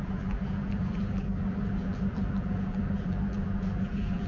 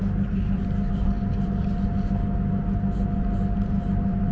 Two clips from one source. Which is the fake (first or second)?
first